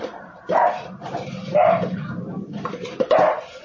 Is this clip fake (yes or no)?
yes